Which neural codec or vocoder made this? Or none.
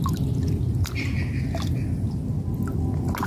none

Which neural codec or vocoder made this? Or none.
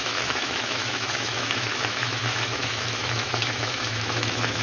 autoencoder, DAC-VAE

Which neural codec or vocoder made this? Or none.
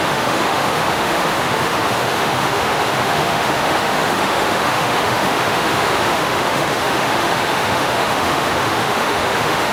autoencoder, DAC-VAE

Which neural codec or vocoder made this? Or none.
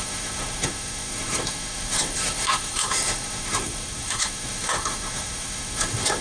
autoencoder, DAC-VAE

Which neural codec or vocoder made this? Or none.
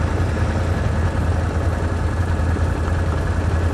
none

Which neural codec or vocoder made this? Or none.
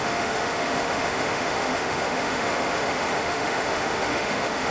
autoencoder, DAC-VAE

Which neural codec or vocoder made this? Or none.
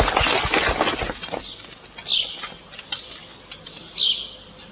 none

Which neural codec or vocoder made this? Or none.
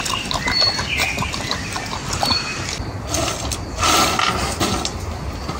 none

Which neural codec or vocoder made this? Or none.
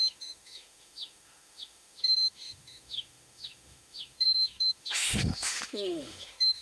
autoencoder, DAC-VAE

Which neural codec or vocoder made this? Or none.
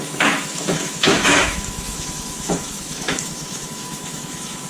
autoencoder, DAC-VAE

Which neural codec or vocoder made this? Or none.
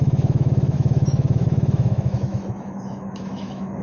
autoencoder, DAC-VAE